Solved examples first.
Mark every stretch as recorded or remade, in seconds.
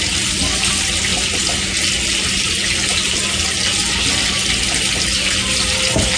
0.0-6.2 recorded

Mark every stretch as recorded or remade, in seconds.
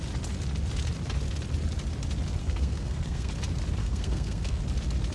0.0-2.4 recorded; 2.4-3.3 remade; 3.3-3.8 recorded; 3.8-4.6 remade; 4.6-5.1 recorded